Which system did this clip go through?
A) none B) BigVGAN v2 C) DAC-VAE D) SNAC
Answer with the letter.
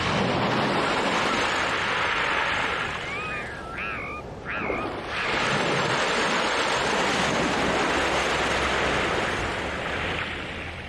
A